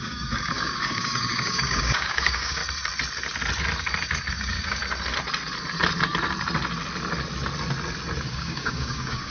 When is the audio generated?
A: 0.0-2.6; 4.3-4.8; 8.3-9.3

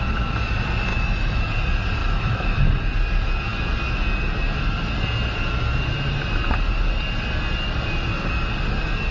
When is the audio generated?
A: 0.9-1.5; 2.0-2.9

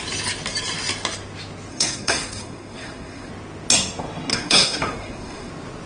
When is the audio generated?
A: 1.7-3.3; 4.3-5.5

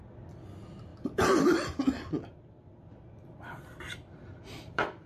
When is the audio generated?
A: 0.9-2.1; 4.2-5.1

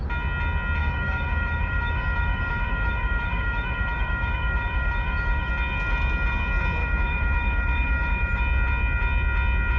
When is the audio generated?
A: 0.8-5.5; 6.8-8.4

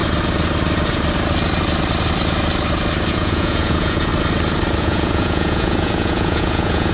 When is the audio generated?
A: 3.1-4.1; 4.8-6.9